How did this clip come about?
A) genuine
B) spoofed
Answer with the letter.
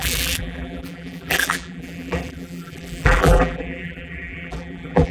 B